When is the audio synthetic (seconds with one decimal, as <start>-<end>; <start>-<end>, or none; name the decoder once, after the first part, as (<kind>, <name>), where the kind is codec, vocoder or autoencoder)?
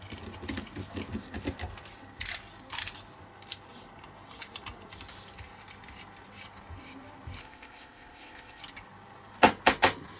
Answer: 7.4-8.6 (codec, ZipCodec)